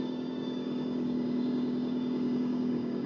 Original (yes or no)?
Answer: no